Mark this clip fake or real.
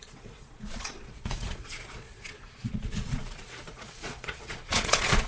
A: fake